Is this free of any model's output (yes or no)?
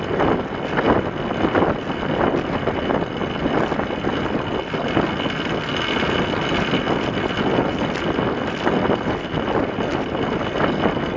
yes